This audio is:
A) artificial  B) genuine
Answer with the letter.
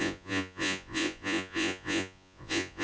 A